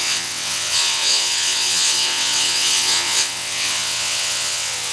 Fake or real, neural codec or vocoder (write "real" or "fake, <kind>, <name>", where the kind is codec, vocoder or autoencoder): fake, vocoder, WaveNeXt